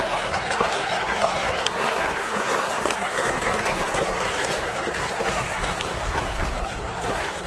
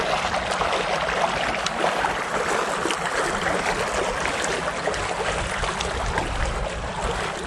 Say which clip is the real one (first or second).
second